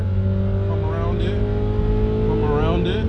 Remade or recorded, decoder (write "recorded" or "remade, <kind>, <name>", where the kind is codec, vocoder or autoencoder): recorded